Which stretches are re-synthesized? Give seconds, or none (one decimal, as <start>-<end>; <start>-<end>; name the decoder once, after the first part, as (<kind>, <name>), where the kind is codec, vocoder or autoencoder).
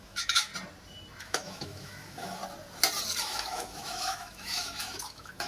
0.0-0.5 (autoencoder, DAC-VAE); 1.2-2.4; 3.2-5.5